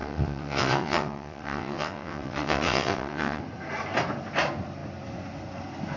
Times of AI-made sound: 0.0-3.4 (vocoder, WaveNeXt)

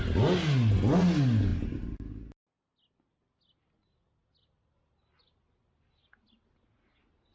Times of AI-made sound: none

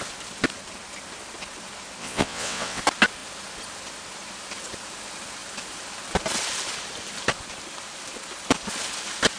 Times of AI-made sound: 2.0-2.8 (vocoder, WaveNeXt)

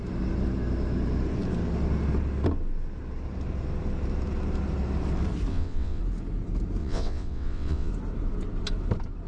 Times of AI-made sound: 5.5-6.0 (vocoder, WaveNeXt); 6.8-7.9

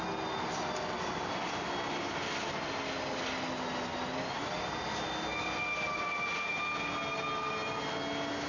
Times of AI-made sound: none

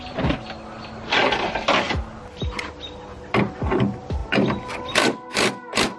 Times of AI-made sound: none